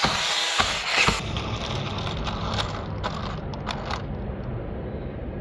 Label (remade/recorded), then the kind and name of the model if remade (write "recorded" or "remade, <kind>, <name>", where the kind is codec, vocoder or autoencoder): recorded